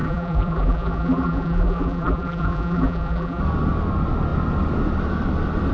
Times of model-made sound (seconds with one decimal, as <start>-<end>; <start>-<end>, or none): 0.0-3.4